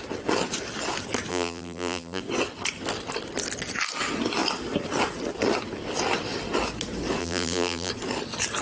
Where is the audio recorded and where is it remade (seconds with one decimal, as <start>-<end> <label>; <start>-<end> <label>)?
0.0-1.3 recorded; 1.3-2.2 remade; 2.2-7.2 recorded; 7.2-7.9 remade; 7.9-8.6 recorded